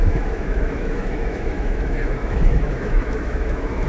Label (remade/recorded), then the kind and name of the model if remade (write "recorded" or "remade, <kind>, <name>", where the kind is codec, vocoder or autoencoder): remade, autoencoder, DAC-VAE